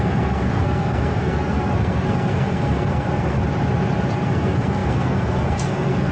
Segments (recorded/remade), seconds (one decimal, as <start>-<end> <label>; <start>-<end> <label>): 0.0-3.4 remade; 3.4-4.1 recorded; 4.1-6.1 remade